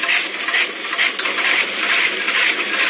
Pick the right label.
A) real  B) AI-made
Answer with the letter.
A